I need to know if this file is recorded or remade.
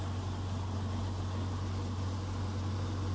recorded